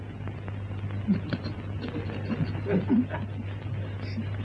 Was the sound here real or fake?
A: real